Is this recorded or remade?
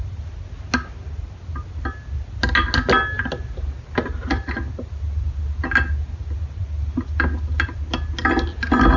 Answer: recorded